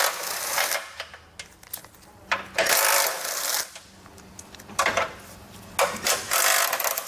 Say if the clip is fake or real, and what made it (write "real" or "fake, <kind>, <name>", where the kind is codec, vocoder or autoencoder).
real